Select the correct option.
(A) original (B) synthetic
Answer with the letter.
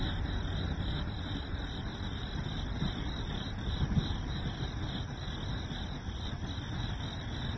A